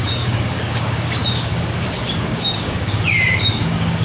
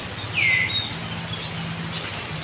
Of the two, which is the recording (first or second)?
second